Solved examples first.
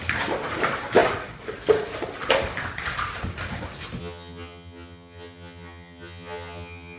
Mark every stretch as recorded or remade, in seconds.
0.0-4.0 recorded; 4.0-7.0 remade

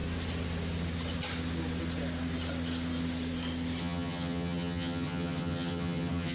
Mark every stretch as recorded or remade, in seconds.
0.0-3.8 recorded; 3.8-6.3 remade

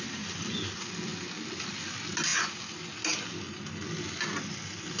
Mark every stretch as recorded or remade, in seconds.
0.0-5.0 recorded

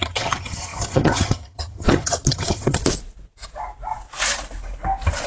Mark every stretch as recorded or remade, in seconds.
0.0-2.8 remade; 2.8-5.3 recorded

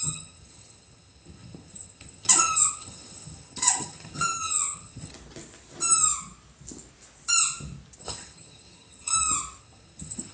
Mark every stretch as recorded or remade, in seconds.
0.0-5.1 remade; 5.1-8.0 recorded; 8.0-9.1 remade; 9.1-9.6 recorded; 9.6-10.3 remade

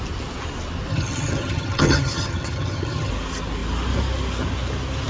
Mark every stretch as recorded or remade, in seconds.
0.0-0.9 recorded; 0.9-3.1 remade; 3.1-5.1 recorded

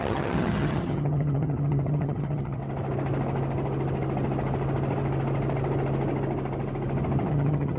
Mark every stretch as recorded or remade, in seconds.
0.0-2.6 remade; 2.6-7.3 recorded; 7.3-7.8 remade

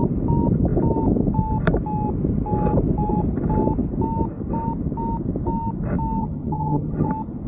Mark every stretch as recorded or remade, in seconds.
0.0-6.2 recorded; 6.2-7.1 remade; 7.1-7.5 recorded